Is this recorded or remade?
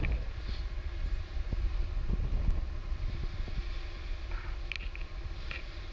recorded